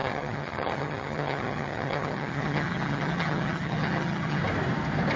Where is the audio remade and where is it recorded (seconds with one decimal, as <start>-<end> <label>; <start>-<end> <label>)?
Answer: 0.0-4.4 remade; 4.4-5.2 recorded